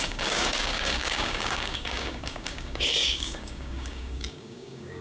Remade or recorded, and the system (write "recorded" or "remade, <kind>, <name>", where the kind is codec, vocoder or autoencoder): remade, codec, DAC